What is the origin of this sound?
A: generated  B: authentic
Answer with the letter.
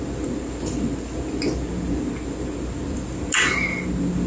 B